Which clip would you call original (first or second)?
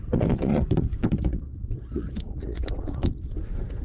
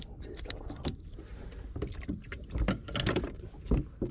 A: second